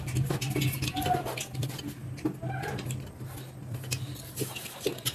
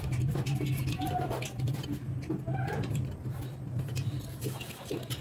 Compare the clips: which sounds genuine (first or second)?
first